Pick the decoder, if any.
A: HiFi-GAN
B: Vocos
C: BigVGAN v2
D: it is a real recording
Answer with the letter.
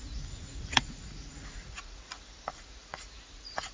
B